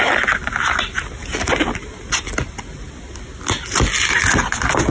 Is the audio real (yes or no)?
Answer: yes